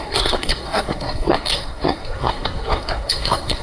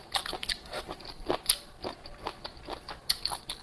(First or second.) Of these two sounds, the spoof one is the first